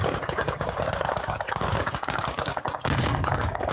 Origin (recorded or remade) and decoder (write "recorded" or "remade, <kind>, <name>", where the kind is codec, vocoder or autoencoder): remade, codec, DAC